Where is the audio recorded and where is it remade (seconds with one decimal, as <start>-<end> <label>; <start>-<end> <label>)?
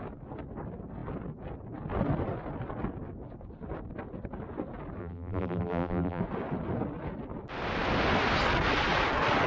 0.0-5.0 recorded; 5.0-6.2 remade; 6.2-9.5 recorded